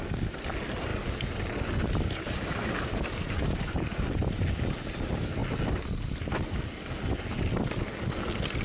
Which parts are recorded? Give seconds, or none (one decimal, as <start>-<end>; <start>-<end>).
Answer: 0.0-8.6